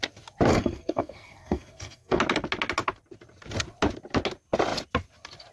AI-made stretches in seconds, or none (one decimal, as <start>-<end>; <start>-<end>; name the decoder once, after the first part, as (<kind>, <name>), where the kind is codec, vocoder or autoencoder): 0.5-2.2 (codec, SNAC)